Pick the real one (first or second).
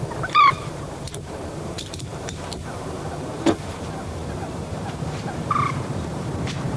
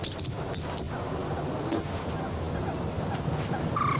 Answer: second